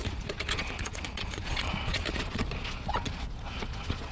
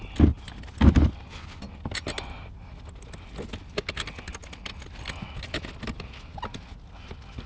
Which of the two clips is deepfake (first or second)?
first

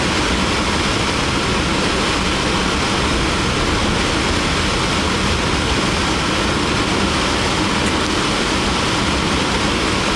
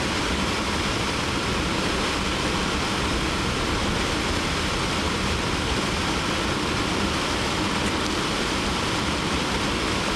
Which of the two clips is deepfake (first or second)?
second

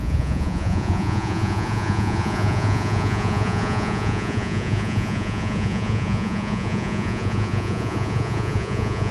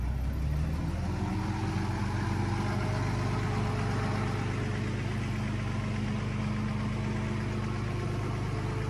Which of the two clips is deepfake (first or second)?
first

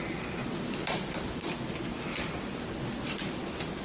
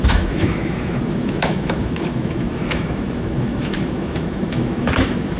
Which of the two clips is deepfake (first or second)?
second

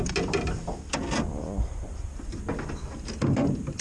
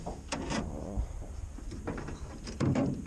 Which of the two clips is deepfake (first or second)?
second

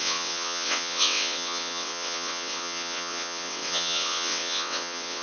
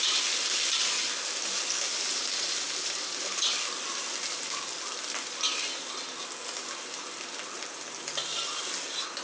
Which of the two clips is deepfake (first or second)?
first